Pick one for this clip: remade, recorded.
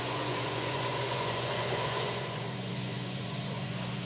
remade